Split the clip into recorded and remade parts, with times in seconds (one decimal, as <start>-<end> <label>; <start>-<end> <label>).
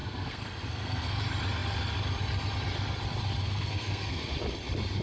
0.0-1.2 remade; 1.2-3.4 recorded; 3.4-4.3 remade; 4.3-5.0 recorded